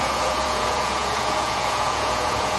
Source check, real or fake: fake